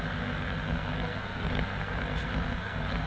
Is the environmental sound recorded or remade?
remade